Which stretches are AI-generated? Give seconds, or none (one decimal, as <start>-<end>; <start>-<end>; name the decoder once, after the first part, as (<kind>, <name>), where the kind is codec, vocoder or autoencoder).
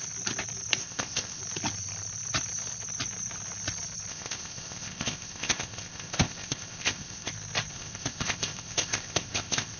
0.8-1.4 (codec, ZipCodec); 4.1-7.3; 7.7-9.8